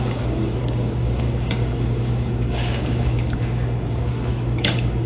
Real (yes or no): no